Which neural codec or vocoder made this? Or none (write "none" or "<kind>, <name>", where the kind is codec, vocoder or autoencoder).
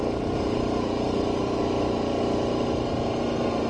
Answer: none